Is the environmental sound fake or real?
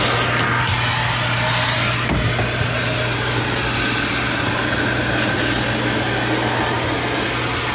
real